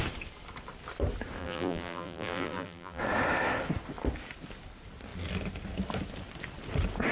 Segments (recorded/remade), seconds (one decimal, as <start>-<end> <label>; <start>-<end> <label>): 0.0-1.4 recorded; 1.4-3.0 remade; 3.0-7.1 recorded